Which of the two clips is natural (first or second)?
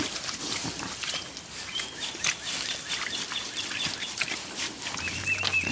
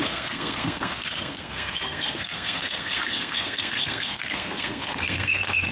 first